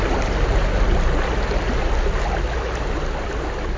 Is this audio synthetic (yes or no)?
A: no